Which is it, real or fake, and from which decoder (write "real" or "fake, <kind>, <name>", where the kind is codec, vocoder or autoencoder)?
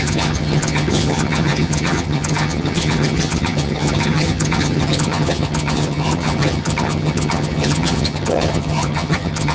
fake, vocoder, HiFi-GAN